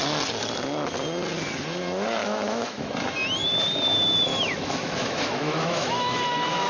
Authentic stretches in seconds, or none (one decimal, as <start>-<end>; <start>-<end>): 0.0-2.2; 2.9-4.3